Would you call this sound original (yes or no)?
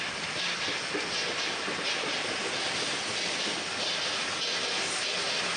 yes